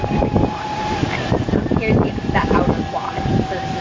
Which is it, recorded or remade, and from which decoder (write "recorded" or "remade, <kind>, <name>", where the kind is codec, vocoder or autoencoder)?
recorded